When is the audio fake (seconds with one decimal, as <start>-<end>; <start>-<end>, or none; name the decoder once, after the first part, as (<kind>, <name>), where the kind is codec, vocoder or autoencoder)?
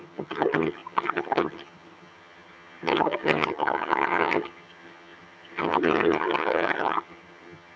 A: 0.0-7.8 (vocoder, HiFi-GAN)